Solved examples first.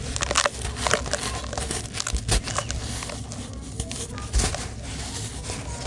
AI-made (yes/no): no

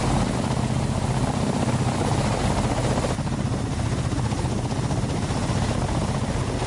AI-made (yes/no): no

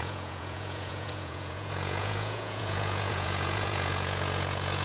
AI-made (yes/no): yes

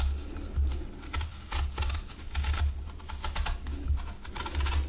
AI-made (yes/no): no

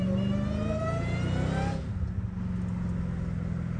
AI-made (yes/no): no